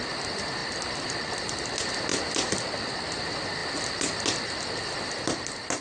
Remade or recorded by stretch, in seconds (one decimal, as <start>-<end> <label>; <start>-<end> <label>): 0.0-5.8 recorded